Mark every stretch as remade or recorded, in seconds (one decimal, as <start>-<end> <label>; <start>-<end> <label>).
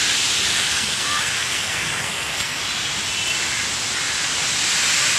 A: 0.0-0.5 recorded; 0.5-2.6 remade; 2.6-5.2 recorded